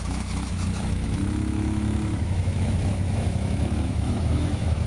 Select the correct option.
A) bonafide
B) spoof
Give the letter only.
B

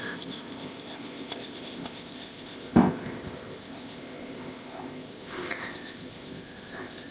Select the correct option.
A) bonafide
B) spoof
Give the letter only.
B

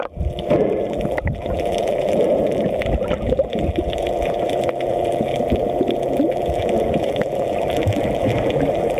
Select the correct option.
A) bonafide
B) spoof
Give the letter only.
B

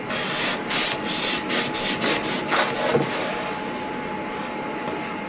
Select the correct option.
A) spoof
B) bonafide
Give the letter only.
B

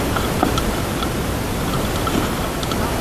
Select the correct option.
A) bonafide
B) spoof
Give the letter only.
A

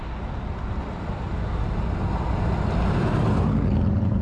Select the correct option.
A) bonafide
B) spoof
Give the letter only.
A